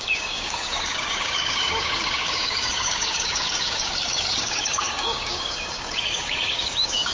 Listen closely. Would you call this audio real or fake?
fake